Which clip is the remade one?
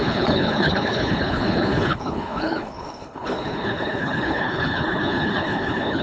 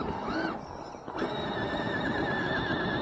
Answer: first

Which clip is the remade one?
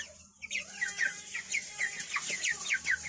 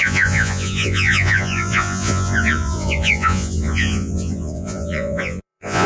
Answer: second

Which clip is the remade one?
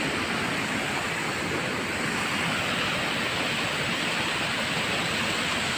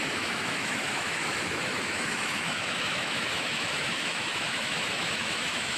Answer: second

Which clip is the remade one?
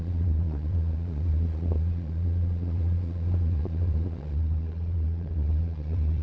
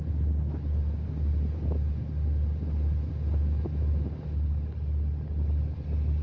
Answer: first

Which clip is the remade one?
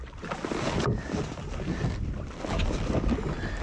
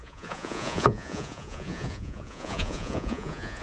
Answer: second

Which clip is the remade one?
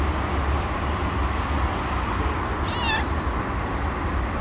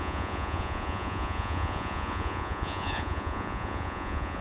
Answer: second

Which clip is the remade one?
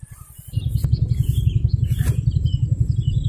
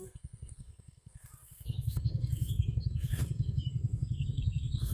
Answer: second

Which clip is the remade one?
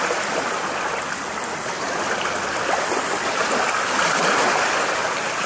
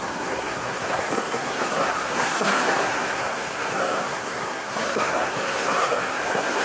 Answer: second